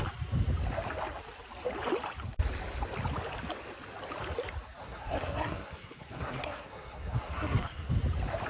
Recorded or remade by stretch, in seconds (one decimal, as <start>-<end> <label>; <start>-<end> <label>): 0.0-4.8 recorded; 4.8-7.9 remade; 7.9-8.5 recorded